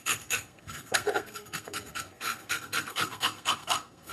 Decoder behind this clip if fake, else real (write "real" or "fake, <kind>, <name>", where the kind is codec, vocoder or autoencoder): fake, codec, SNAC